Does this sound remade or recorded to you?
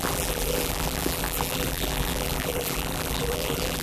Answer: remade